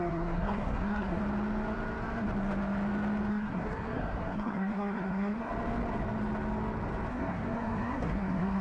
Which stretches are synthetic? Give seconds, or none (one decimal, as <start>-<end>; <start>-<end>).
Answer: 0.0-1.2; 3.3-5.5; 7.1-8.6